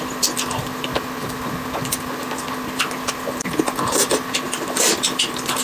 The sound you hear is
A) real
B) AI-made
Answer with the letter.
A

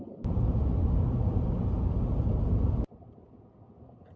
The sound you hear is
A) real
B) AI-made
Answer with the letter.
A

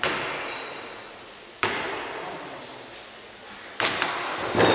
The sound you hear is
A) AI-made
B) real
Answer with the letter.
B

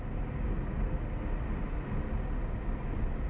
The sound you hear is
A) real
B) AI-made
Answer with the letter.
A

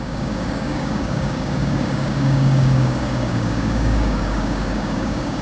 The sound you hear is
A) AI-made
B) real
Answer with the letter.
A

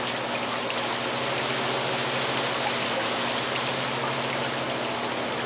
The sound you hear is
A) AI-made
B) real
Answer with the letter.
B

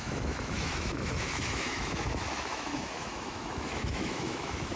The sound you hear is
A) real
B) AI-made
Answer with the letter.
B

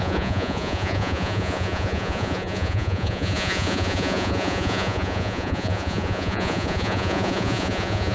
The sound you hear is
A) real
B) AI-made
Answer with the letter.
B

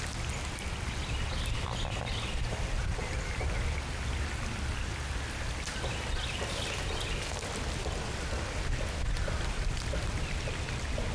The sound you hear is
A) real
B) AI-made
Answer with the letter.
A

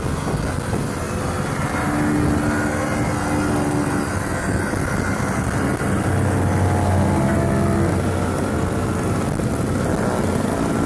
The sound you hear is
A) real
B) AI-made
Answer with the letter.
A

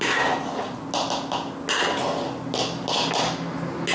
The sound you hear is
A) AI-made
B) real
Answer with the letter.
B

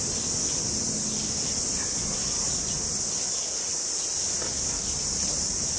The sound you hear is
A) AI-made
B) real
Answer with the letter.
B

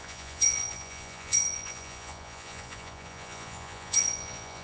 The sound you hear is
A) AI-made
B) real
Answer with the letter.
A